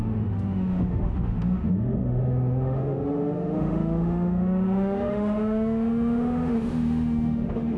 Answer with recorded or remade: remade